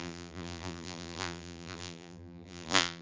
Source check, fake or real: fake